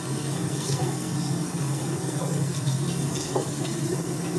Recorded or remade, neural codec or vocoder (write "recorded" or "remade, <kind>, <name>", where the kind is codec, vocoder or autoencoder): remade, codec, SNAC